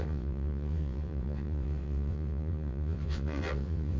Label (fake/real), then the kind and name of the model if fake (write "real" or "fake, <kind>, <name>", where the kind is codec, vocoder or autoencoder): fake, vocoder, WaveNeXt